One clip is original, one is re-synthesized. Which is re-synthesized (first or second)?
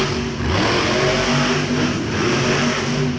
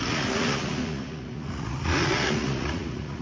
second